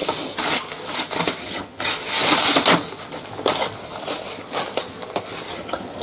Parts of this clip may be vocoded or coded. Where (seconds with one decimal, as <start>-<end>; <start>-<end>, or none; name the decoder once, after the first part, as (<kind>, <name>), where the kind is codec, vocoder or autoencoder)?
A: 1.4-1.9 (vocoder, HiFi-GAN); 5.5-6.0